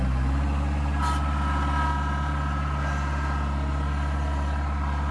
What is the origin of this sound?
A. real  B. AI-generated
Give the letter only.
A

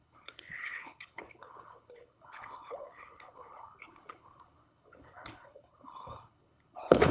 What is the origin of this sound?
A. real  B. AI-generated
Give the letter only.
B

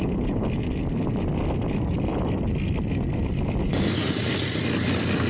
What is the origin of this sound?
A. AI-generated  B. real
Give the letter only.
B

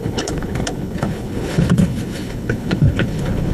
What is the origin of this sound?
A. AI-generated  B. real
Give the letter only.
A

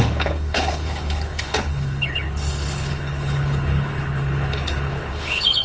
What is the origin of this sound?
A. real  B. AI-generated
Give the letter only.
B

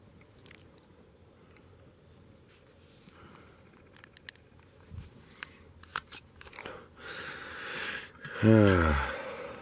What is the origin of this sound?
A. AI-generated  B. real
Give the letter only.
B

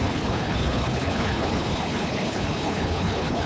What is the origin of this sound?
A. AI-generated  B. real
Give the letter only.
A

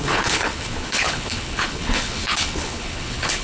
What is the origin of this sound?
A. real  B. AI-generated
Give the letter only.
B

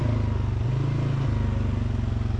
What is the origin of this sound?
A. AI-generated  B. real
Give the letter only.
B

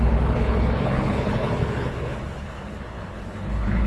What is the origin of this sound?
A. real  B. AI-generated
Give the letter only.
B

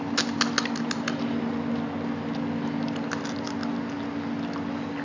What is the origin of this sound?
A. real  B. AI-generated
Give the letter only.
A